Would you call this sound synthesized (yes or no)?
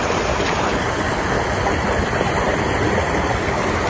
no